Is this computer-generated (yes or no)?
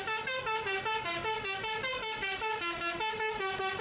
no